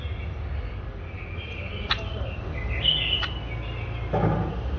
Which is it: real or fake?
real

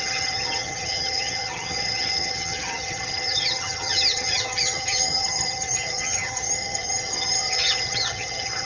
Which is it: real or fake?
fake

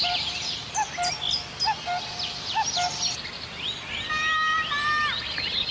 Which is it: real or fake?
real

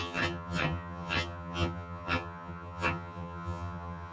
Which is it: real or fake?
fake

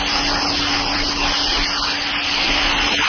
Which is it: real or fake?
real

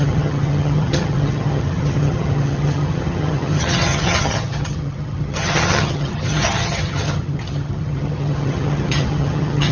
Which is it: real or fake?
fake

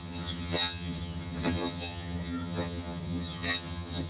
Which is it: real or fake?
fake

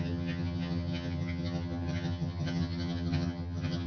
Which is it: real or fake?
fake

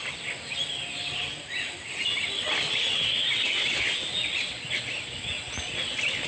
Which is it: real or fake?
real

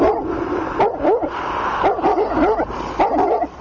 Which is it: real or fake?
real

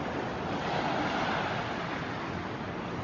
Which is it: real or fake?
real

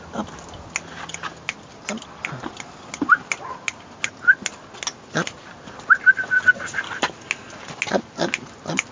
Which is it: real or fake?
real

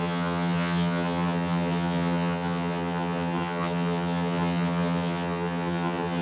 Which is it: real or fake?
fake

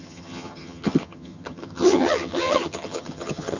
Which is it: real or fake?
fake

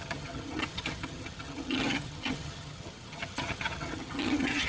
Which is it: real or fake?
fake